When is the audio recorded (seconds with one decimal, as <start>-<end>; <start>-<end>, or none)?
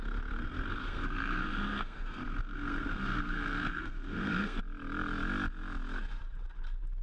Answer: 0.0-0.4; 4.6-7.0